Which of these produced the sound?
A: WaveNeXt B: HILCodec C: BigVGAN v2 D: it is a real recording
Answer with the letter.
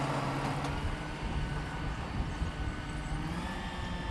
D